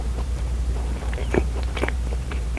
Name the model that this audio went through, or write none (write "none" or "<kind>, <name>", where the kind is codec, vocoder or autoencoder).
vocoder, BigVGAN v2